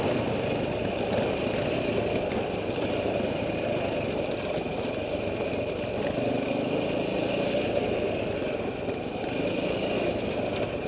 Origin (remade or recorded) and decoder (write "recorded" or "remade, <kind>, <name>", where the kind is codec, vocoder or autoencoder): recorded